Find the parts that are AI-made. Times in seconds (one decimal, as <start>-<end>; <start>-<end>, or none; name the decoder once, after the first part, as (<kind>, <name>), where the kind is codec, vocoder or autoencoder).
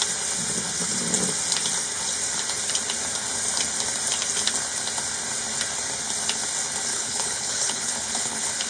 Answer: 6.9-8.7 (codec, HILCodec)